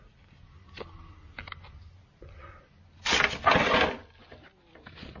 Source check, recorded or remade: recorded